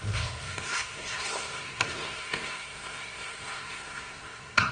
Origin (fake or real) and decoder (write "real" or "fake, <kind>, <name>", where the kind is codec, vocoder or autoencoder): fake, codec, SNAC